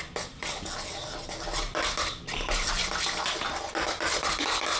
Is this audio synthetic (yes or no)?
no